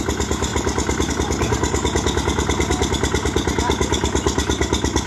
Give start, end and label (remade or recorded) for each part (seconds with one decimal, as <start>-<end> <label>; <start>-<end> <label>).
0.0-5.1 recorded